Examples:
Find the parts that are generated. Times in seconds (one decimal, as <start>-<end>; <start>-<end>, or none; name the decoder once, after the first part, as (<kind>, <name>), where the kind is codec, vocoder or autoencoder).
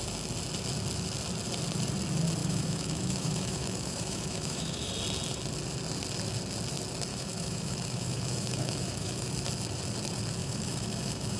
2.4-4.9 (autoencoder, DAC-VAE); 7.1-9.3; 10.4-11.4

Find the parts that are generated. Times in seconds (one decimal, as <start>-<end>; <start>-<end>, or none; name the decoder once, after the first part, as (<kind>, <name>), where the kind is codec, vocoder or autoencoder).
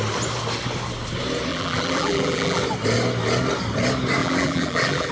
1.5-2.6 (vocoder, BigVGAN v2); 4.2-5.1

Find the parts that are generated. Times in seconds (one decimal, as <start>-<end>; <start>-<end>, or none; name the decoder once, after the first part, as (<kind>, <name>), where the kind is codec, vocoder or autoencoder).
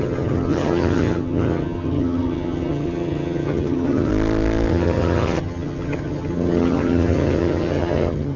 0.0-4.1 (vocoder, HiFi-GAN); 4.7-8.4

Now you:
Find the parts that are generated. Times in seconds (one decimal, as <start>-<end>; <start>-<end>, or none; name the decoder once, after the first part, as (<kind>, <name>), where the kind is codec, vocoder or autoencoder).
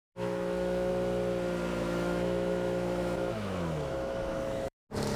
0.0-0.9 (autoencoder, DAC-VAE); 1.7-4.8